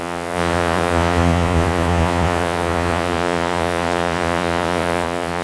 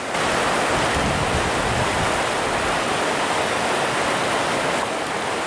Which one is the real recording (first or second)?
second